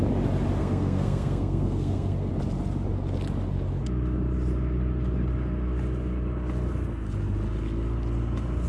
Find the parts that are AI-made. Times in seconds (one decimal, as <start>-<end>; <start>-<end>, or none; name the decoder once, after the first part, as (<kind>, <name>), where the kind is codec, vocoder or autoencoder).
0.6-2.3 (codec, SNAC)